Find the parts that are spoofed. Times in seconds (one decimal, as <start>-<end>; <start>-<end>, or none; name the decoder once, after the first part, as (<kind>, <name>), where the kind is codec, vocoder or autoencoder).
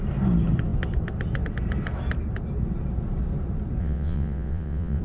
3.8-5.0 (vocoder, WaveNeXt)